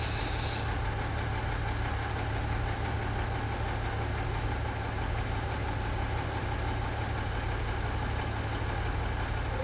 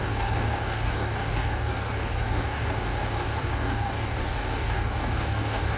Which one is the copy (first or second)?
second